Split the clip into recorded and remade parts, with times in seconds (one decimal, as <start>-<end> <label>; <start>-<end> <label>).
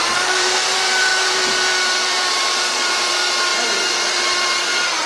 0.0-5.1 remade